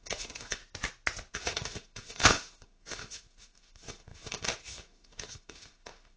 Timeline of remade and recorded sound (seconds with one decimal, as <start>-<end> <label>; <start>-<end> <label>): 0.0-0.6 remade; 0.6-1.3 recorded; 1.3-6.2 remade